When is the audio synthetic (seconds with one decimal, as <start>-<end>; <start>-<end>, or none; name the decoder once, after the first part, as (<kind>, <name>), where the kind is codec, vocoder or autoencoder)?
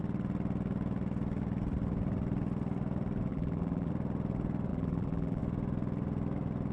3.3-3.9 (vocoder, BigVGAN v2); 4.7-5.4